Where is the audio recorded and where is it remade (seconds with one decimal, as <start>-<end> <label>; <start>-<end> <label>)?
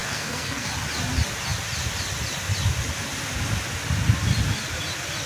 0.0-0.7 remade; 0.7-5.3 recorded